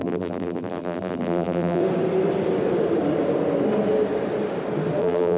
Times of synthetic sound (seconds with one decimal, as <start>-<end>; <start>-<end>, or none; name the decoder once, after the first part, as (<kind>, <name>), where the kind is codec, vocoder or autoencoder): 0.0-1.8 (vocoder, BigVGAN v2); 5.0-5.4